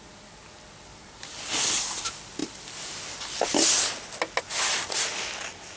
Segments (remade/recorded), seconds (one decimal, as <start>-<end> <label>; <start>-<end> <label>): 0.0-0.9 recorded; 0.9-1.4 remade; 1.4-5.8 recorded